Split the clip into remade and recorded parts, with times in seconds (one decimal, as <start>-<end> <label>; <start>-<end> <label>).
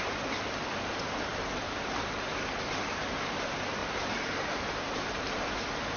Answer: 0.0-1.3 recorded; 1.3-2.0 remade; 2.0-3.8 recorded; 3.8-5.5 remade; 5.5-6.0 recorded